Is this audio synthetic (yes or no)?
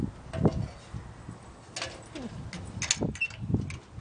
no